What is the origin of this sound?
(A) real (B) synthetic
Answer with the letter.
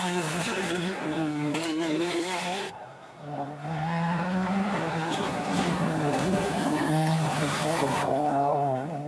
B